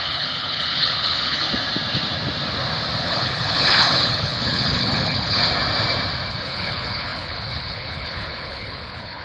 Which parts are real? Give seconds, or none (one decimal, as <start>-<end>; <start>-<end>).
1.4-3.0; 5.4-6.3